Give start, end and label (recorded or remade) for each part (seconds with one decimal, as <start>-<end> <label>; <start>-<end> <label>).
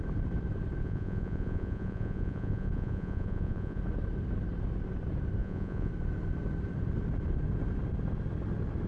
0.0-0.8 recorded; 0.8-3.8 remade; 3.8-5.4 recorded; 5.4-5.9 remade; 5.9-8.9 recorded